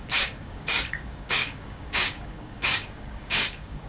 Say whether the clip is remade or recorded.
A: remade